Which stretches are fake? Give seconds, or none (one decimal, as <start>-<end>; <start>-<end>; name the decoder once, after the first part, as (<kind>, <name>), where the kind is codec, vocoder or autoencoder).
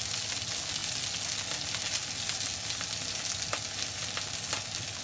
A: none